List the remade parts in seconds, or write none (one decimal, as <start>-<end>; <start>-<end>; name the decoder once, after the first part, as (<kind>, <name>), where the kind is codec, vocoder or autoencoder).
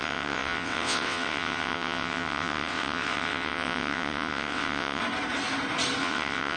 0.0-5.0 (vocoder, WaveNeXt); 6.0-6.6